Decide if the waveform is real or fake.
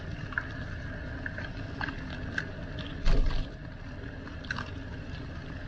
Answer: real